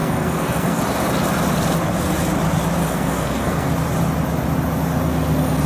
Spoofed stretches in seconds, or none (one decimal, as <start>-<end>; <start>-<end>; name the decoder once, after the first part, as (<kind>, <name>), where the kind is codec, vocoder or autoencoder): 0.0-0.8 (codec, SNAC); 2.8-3.7